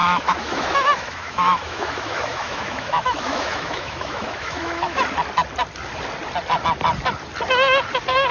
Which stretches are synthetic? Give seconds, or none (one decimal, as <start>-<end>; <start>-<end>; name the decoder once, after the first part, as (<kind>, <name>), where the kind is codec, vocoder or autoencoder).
0.0-5.0 (autoencoder, DAC-VAE)